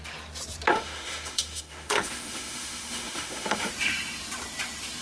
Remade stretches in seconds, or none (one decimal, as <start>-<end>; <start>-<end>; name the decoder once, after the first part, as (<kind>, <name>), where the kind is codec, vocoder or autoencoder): 0.7-3.7 (autoencoder, DAC-VAE)